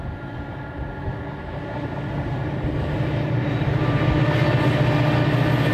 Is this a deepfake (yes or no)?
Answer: no